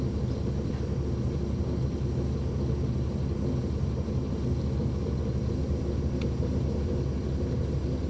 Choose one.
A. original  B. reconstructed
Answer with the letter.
A